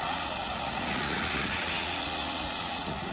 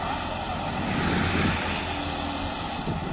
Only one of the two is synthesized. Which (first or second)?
first